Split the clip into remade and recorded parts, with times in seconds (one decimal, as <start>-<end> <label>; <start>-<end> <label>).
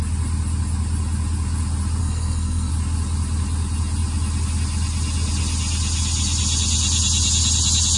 0.0-2.0 recorded; 2.0-2.7 remade; 2.7-8.0 recorded